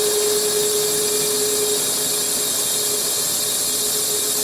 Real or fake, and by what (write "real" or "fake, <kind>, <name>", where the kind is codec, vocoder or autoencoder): real